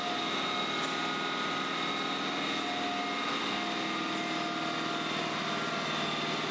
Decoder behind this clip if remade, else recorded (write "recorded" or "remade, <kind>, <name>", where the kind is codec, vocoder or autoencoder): recorded